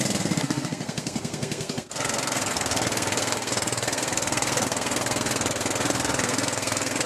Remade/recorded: remade